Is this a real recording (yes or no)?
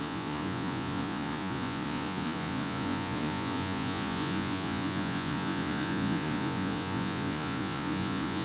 no